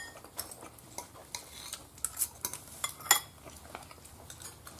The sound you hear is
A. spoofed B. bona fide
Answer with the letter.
B